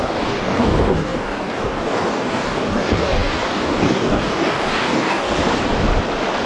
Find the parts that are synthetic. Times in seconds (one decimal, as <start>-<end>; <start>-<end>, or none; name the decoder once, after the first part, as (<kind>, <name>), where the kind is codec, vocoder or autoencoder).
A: 0.0-5.4 (codec, DAC)